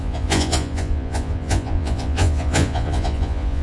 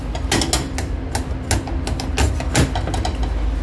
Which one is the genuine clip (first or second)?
second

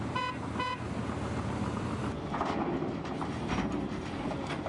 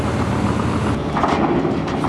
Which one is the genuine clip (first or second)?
second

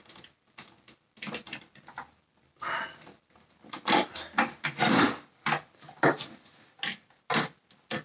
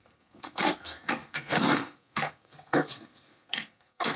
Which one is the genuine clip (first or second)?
first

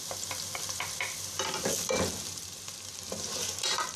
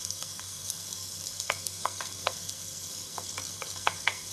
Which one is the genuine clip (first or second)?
first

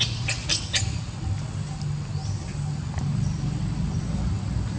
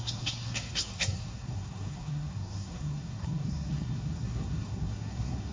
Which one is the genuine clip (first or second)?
first